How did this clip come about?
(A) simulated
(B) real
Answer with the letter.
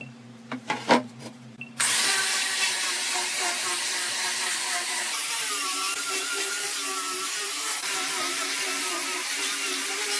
A